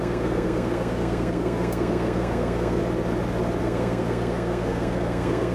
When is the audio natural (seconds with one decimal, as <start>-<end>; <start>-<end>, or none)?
2.8-3.6

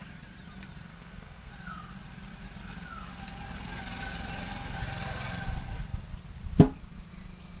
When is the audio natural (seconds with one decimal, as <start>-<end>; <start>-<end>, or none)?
0.0-0.9; 1.5-7.6